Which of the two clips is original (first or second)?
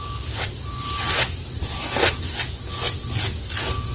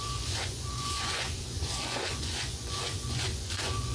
first